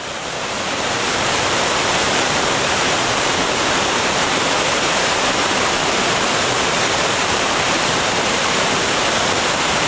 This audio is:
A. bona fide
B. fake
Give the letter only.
B